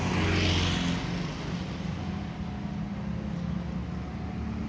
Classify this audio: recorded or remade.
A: recorded